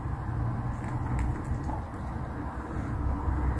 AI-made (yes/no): no